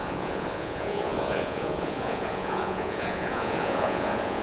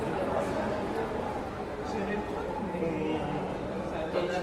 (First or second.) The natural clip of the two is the second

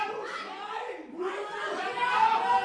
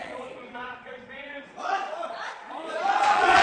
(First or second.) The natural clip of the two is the first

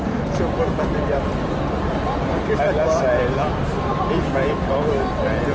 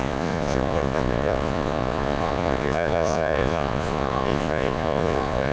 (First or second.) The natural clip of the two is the first